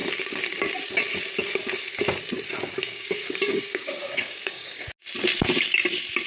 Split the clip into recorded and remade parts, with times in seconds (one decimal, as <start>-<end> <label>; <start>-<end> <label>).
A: 0.0-2.8 recorded; 2.8-4.9 remade; 4.9-6.3 recorded